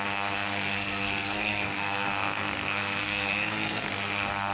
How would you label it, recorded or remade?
remade